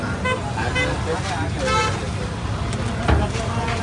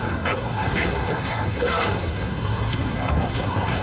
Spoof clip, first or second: second